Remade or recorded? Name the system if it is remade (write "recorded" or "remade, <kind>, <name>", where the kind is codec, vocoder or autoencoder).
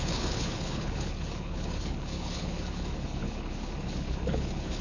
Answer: remade, codec, HILCodec